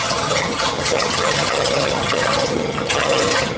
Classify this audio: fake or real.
fake